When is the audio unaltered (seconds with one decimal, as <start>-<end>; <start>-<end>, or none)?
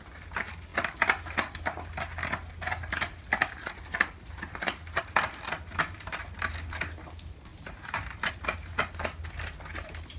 0.0-7.5; 8.3-10.2